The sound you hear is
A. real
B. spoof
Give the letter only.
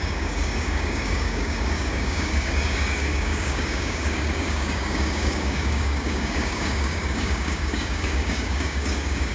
B